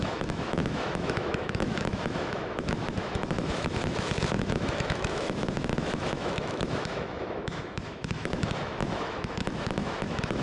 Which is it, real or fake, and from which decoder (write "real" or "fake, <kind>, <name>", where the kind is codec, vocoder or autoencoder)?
fake, autoencoder, DAC-VAE